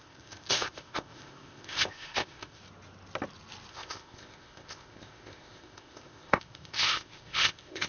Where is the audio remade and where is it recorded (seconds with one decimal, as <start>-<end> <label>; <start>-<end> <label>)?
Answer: 0.0-2.6 remade; 2.6-3.7 recorded; 3.7-7.9 remade